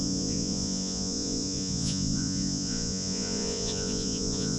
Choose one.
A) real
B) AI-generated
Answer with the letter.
B